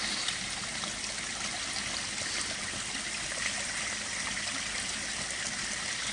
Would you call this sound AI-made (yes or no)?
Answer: no